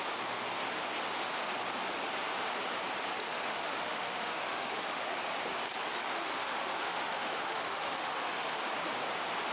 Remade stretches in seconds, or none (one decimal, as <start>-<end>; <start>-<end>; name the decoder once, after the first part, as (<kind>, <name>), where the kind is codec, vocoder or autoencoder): 3.2-5.0 (autoencoder, DAC-VAE); 6.2-8.6